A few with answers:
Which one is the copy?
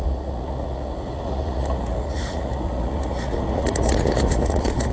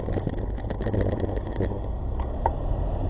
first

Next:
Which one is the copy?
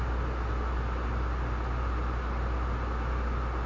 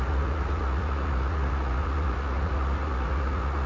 second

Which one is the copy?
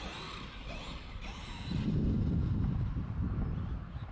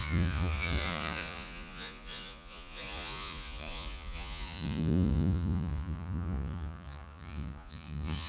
second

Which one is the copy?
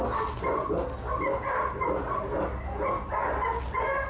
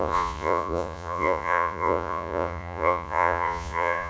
second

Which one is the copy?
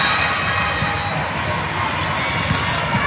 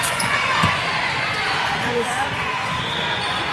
second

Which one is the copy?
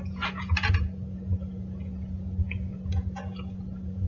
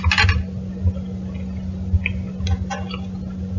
first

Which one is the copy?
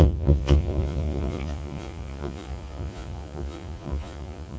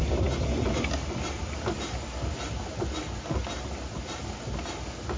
first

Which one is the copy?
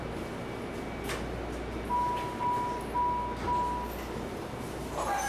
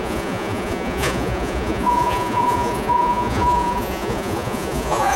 second